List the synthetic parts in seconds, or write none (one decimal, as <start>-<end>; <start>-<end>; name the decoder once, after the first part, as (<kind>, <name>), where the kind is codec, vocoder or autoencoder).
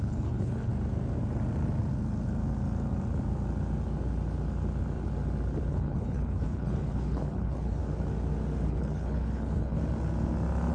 0.0-0.7 (codec, HILCodec); 5.7-7.8; 8.7-9.8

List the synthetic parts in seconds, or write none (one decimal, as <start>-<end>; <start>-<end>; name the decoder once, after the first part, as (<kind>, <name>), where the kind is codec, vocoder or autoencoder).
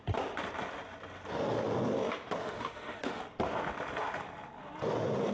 2.4-3.2 (autoencoder, DAC-VAE)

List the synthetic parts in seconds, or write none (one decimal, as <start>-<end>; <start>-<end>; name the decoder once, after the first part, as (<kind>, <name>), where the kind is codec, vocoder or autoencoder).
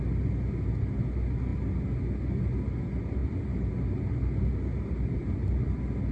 none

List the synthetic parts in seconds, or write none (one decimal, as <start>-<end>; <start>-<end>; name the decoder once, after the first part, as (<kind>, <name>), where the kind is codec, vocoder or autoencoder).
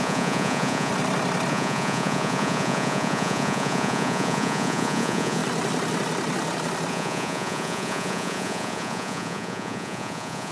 0.0-0.9 (vocoder, Vocos); 1.5-5.4; 6.9-10.5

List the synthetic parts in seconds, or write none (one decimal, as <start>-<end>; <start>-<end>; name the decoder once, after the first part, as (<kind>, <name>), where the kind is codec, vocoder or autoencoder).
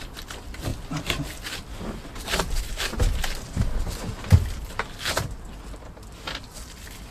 0.0-2.9 (vocoder, BigVGAN v2); 3.6-7.1